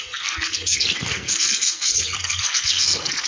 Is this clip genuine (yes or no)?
no